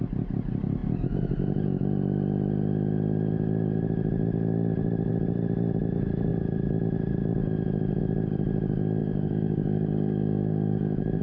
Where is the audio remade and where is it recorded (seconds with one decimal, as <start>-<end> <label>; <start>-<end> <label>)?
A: 0.0-9.0 recorded; 9.0-11.2 remade